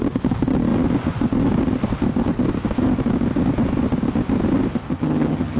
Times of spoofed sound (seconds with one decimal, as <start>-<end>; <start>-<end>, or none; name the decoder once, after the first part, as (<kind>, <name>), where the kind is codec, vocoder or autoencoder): 4.9-5.6 (vocoder, HiFi-GAN)